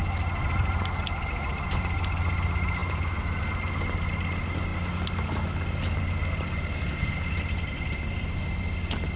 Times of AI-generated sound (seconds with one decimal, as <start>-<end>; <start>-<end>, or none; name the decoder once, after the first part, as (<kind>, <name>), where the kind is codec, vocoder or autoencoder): none

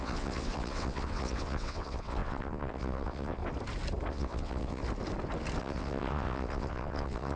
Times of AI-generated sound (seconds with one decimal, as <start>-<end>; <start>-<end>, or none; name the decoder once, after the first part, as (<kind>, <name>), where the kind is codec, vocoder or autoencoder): 0.0-3.4 (vocoder, WaveNeXt); 4.1-4.8; 5.6-7.4